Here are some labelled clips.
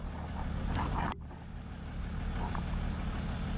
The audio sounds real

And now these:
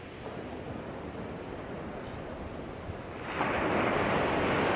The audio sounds real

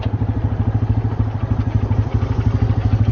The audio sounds real